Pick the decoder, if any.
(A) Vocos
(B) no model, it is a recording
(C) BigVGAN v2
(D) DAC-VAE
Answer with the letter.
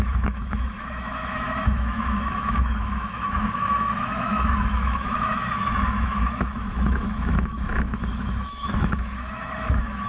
D